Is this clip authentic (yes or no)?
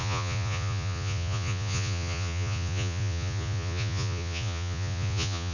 no